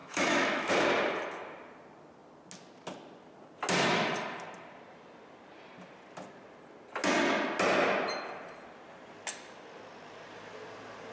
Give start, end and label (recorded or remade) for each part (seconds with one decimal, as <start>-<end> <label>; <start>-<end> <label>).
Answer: 0.0-0.7 remade; 0.7-11.1 recorded